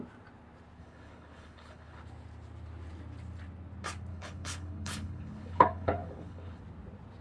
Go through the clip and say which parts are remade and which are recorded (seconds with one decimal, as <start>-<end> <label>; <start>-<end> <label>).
0.0-0.8 recorded; 0.8-2.0 remade; 2.0-4.1 recorded; 4.1-6.6 remade; 6.6-7.2 recorded